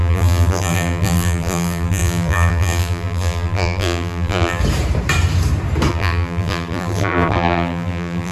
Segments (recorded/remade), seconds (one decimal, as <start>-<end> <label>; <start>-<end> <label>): 0.0-4.6 remade; 4.6-5.9 recorded; 5.9-8.3 remade